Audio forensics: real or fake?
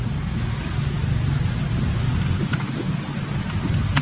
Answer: real